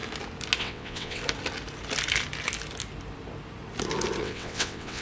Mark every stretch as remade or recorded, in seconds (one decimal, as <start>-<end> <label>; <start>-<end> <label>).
0.0-0.6 recorded; 0.6-1.2 remade; 1.2-4.2 recorded; 4.2-5.0 remade